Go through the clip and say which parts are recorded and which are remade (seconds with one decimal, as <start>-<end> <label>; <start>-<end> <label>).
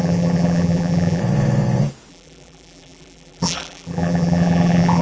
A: 0.0-1.2 remade; 1.2-2.1 recorded; 2.1-5.0 remade